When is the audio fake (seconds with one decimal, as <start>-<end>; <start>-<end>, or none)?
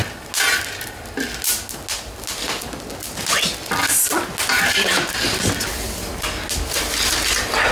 none